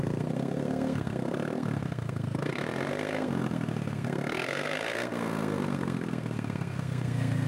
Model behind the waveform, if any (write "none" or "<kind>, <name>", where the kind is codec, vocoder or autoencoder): codec, SNAC